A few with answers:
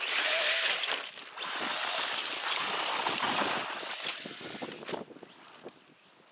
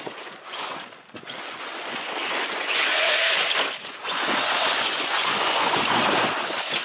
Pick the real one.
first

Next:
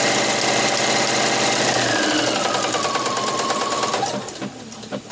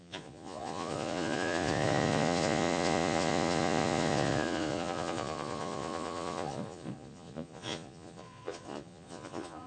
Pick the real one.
first